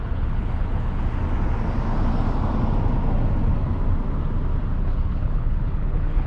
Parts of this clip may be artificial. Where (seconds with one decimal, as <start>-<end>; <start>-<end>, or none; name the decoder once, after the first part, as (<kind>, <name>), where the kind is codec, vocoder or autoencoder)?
0.0-1.0 (codec, HILCodec); 4.8-6.3